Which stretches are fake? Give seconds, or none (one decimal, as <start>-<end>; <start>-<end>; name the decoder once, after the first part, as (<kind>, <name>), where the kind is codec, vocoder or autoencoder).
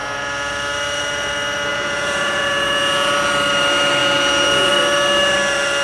1.7-3.1 (vocoder, Vocos); 4.0-4.7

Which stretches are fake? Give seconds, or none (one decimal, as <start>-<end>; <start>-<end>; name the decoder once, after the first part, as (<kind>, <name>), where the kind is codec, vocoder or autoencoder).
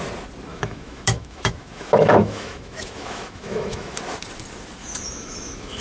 0.5-4.0 (autoencoder, DAC-VAE); 4.8-5.8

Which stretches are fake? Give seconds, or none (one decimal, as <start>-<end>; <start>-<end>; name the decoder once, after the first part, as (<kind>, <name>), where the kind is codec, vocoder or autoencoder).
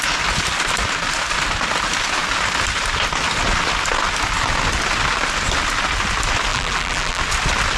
6.5-7.2 (vocoder, BigVGAN v2)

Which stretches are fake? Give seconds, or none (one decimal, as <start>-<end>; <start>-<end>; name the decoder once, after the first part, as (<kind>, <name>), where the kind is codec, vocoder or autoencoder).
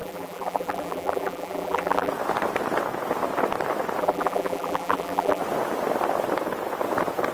0.0-2.1 (vocoder, BigVGAN v2); 4.0-5.4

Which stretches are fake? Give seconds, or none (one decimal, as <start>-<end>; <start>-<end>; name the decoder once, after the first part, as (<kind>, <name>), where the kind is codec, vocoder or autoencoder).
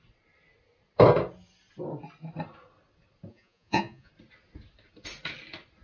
3.3-4.1 (vocoder, Vocos)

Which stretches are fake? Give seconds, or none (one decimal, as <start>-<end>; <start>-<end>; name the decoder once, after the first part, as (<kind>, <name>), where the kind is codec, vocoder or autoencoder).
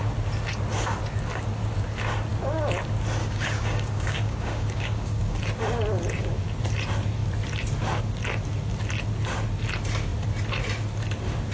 3.2-5.4 (codec, DAC)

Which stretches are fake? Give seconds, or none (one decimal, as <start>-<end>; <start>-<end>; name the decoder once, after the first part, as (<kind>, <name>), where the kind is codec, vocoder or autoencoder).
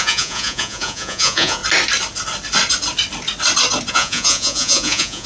0.0-1.6 (vocoder, Vocos); 3.9-5.3